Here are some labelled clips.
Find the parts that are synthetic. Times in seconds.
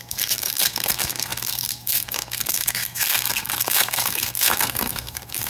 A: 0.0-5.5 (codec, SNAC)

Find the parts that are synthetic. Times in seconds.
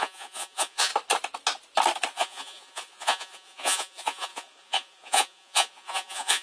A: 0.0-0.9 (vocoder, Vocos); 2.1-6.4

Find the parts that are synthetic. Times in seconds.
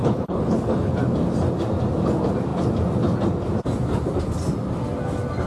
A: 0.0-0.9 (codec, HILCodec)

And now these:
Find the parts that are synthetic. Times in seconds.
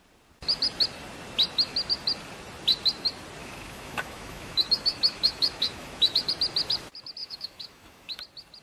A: 3.4-6.3 (autoencoder, DAC-VAE); 7.2-8.2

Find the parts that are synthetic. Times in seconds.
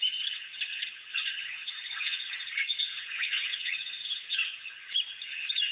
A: 1.1-4.5 (vocoder, Vocos)